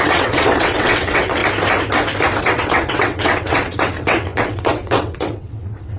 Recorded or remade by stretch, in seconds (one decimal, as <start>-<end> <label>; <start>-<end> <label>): 0.0-1.4 remade; 1.4-2.4 recorded; 2.4-6.0 remade